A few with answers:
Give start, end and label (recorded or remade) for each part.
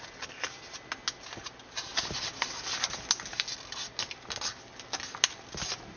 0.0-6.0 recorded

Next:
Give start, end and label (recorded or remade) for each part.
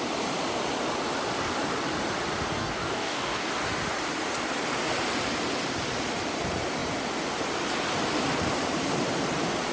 0.0-2.6 recorded; 2.6-3.5 remade; 3.5-9.7 recorded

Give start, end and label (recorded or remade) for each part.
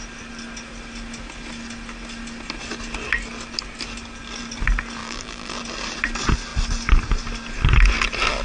0.0-5.0 recorded; 5.0-5.6 remade; 5.6-8.4 recorded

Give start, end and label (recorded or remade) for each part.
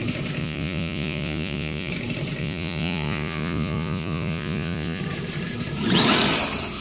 0.0-0.4 recorded; 0.4-1.9 remade; 1.9-2.4 recorded; 2.4-5.0 remade; 5.0-6.8 recorded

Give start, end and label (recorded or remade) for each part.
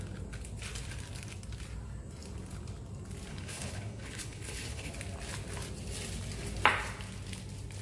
0.0-3.3 recorded; 3.3-4.9 remade; 4.9-7.8 recorded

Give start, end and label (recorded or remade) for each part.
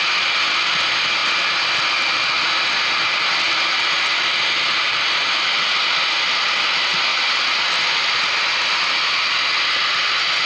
0.0-10.5 recorded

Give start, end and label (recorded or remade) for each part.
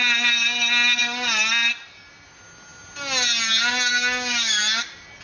0.0-3.9 recorded; 3.9-4.6 remade; 4.6-5.2 recorded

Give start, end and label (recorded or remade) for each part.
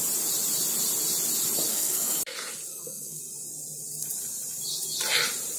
0.0-1.7 recorded; 1.7-2.2 remade; 2.2-2.7 recorded; 2.7-3.2 remade; 3.2-5.6 recorded